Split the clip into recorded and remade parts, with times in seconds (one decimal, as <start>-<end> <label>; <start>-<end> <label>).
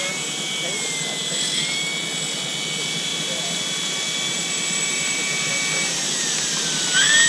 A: 0.0-3.1 recorded; 3.1-3.8 remade; 3.8-4.4 recorded; 4.4-5.5 remade; 5.5-7.3 recorded